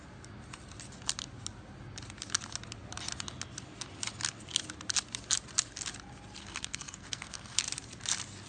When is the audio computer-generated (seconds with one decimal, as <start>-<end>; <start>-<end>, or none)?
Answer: 6.4-7.6